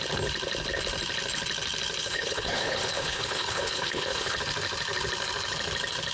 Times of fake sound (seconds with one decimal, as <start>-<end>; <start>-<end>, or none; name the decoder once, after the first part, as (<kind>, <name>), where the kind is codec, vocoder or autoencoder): 2.0-4.4 (codec, HILCodec)